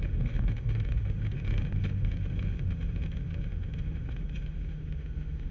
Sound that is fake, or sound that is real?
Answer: fake